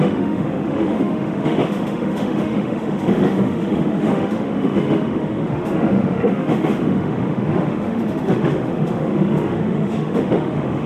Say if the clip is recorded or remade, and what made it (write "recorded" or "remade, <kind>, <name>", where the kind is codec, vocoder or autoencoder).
remade, autoencoder, DAC-VAE